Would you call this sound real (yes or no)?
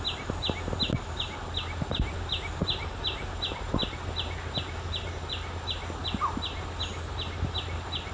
yes